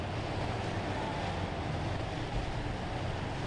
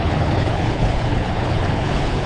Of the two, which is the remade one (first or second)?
second